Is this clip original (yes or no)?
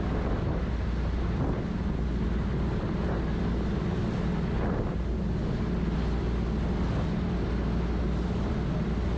yes